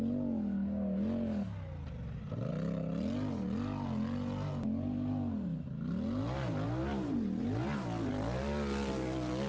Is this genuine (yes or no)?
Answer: yes